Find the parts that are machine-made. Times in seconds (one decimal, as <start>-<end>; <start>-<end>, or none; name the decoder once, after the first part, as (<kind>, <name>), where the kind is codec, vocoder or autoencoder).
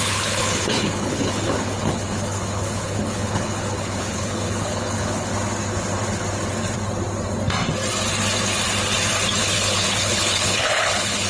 0.0-5.3 (codec, HILCodec); 9.4-11.3